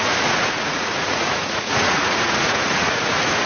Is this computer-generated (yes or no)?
yes